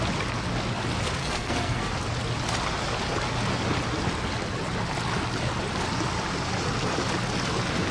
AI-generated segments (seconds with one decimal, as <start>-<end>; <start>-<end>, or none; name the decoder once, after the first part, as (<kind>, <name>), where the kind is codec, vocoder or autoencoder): 1.2-1.9 (codec, SNAC)